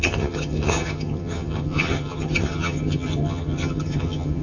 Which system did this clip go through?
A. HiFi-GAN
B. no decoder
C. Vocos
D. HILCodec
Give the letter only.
A